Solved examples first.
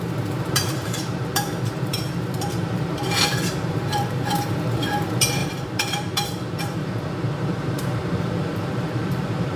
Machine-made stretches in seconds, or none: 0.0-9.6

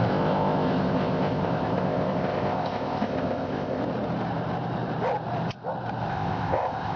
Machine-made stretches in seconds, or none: 0.0-3.8; 6.1-7.0

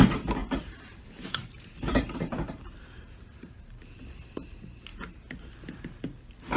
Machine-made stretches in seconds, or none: 0.4-3.8

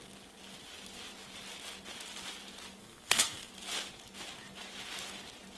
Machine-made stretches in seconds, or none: 2.8-3.5

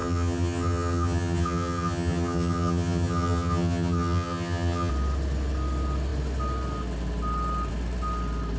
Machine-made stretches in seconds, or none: 0.0-4.9

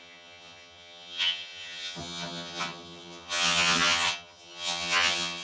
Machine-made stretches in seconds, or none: 0.0-5.4

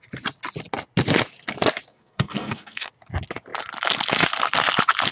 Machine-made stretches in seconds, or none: 1.9-2.9

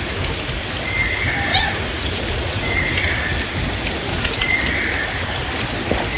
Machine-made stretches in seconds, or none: 1.5-2.6; 4.1-4.7